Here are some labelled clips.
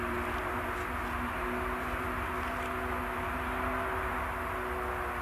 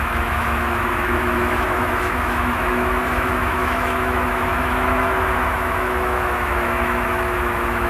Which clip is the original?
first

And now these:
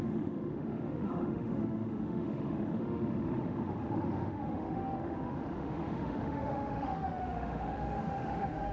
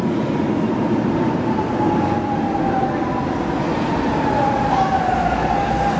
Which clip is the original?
second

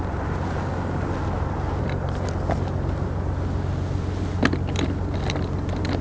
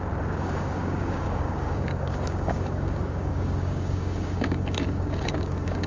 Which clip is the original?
first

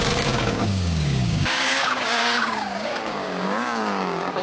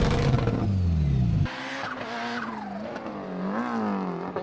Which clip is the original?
second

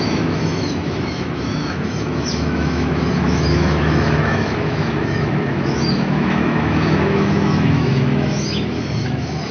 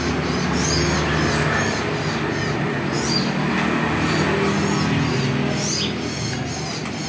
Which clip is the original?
second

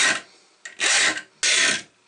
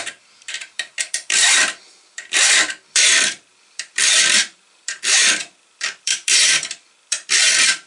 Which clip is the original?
first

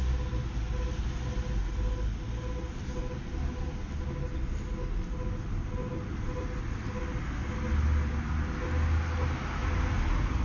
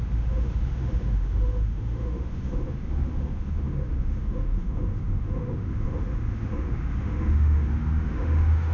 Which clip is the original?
first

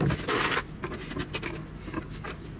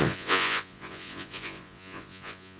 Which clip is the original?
first